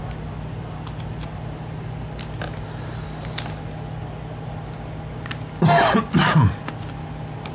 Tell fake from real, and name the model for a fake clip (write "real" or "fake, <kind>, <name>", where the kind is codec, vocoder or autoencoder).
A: real